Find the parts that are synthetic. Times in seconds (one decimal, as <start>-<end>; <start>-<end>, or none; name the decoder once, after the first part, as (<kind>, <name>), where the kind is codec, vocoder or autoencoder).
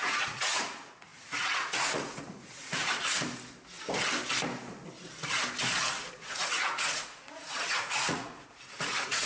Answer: 0.0-3.1 (vocoder, Vocos); 6.1-9.3